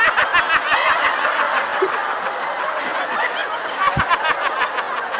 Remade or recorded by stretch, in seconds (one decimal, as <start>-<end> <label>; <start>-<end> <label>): 0.0-5.2 recorded